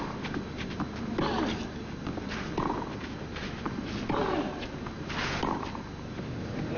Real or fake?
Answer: real